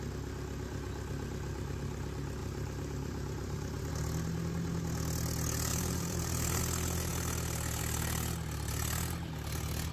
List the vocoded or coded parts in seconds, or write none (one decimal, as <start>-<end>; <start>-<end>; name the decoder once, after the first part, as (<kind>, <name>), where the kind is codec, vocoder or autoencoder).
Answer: 2.4-3.9 (vocoder, BigVGAN v2); 5.7-6.6